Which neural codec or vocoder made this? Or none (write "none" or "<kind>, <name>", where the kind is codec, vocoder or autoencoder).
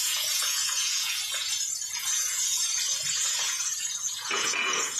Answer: vocoder, Vocos